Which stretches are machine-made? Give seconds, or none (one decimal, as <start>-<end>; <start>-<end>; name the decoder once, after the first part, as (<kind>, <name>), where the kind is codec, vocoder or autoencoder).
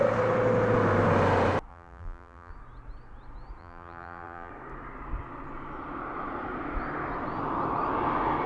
1.7-2.5 (vocoder, BigVGAN v2); 3.6-4.5